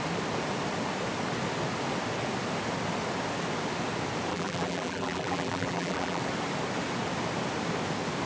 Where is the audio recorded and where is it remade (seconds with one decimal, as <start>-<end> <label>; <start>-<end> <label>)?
0.0-4.3 recorded; 4.3-6.2 remade; 6.2-8.3 recorded